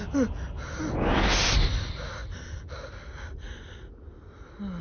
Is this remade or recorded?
recorded